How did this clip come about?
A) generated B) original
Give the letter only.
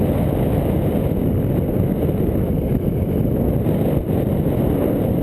B